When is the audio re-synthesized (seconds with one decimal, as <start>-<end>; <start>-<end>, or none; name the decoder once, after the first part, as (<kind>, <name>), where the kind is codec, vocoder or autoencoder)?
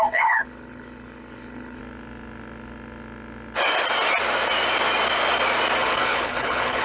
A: 0.0-1.8 (codec, HILCodec); 5.8-6.8